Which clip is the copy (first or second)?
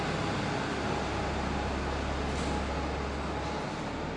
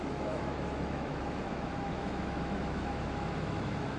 second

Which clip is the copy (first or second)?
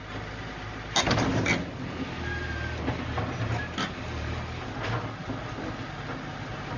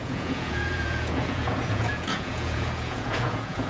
second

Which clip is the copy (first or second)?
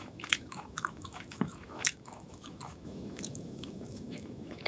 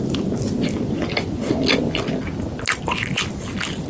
first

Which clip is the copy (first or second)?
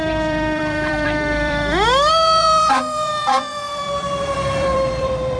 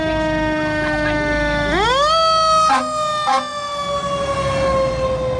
first